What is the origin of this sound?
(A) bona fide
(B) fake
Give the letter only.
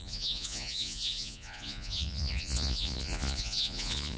B